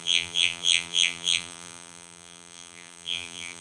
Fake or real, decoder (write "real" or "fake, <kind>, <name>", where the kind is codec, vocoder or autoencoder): fake, vocoder, BigVGAN v2